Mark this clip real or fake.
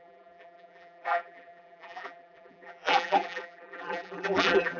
fake